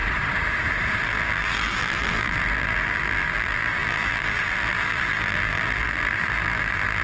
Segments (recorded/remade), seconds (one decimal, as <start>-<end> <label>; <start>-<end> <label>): 0.0-1.0 recorded; 1.0-7.0 remade